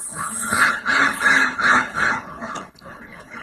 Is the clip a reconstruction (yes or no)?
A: yes